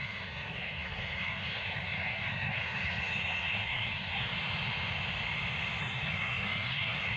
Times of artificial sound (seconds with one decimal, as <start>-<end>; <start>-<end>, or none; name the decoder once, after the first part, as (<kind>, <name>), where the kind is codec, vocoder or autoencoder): 0.0-4.3 (codec, SNAC); 5.8-7.2